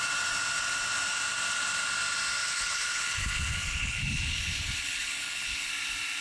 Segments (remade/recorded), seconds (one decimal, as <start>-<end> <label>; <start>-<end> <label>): 0.0-2.4 recorded; 2.4-5.7 remade; 5.7-6.2 recorded